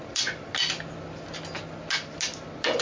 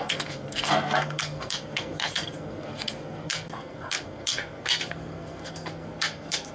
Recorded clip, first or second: first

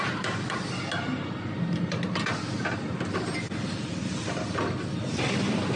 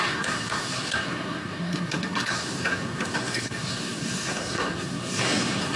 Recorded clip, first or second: first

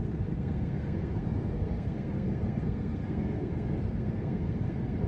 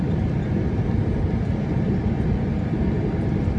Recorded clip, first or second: second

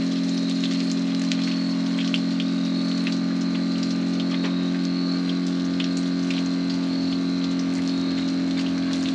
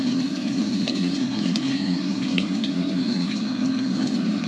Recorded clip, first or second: first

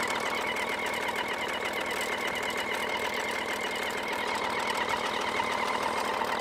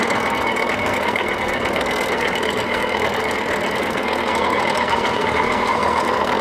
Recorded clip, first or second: first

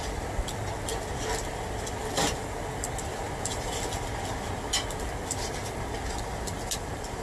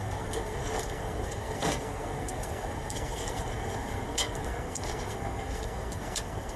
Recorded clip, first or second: first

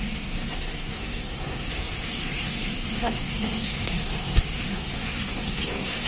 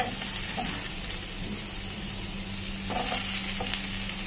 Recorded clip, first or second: second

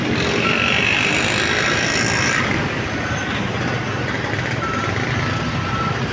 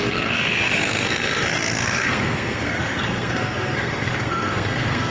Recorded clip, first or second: first